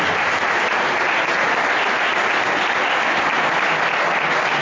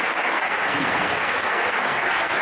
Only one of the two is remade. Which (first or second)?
second